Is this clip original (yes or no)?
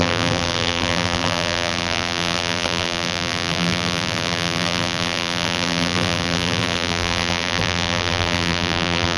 no